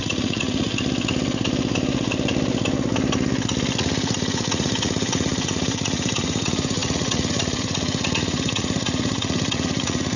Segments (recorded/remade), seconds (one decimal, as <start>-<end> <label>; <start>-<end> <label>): 0.0-0.7 remade; 0.7-3.8 recorded; 3.8-10.2 remade